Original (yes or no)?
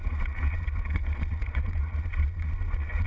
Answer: no